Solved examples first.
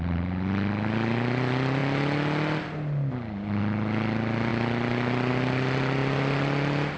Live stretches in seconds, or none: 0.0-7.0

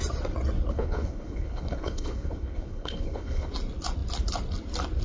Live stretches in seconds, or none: 0.0-0.7; 3.5-5.0

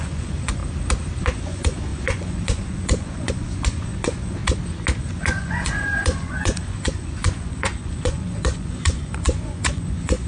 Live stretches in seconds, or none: 0.6-1.2; 4.4-5.0

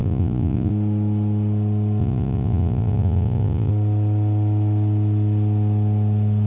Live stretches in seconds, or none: 0.7-2.0; 3.7-6.5